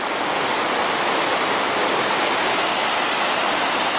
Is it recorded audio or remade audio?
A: recorded